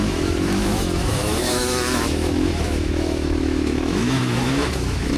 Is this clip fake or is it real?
fake